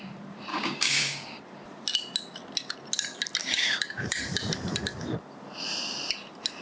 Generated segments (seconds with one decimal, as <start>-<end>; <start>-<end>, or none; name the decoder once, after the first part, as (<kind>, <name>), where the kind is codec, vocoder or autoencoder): 0.5-1.4 (codec, DAC); 3.4-4.2